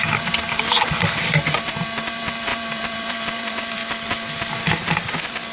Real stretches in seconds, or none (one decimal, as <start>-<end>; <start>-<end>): 3.8-4.6

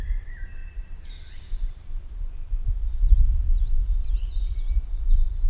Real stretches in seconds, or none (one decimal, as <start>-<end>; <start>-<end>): none

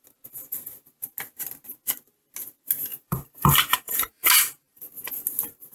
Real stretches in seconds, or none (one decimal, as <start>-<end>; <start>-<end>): 0.0-2.9; 4.8-5.7

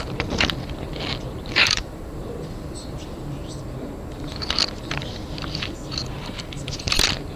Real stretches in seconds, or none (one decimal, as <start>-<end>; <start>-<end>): 3.4-4.1

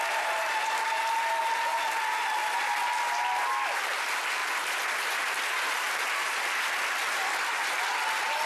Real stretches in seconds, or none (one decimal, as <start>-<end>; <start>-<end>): 0.0-8.5

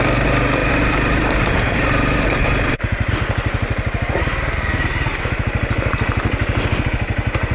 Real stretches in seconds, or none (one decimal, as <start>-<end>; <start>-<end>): 0.0-0.6; 3.1-7.5

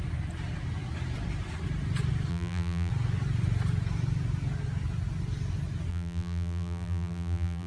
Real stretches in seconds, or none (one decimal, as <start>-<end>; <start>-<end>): 0.0-2.3; 2.9-5.9